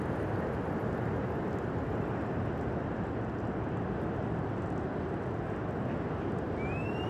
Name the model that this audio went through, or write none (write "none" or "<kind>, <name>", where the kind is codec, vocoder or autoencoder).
none